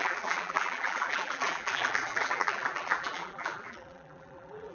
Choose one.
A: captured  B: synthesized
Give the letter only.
B